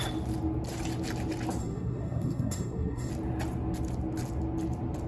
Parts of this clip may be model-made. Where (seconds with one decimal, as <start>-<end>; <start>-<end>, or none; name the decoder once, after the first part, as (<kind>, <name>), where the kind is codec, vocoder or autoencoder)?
1.6-3.1 (codec, SNAC)